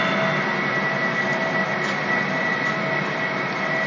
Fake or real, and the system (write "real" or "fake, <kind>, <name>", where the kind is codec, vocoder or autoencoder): real